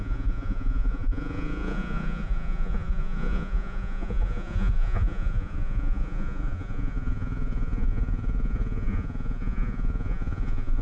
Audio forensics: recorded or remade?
remade